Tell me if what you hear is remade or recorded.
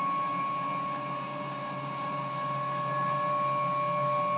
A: recorded